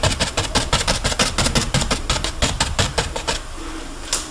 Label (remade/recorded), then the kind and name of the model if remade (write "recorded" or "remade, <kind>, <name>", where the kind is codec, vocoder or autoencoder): recorded